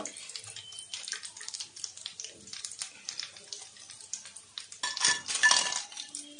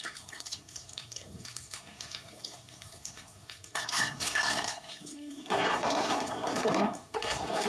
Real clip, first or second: first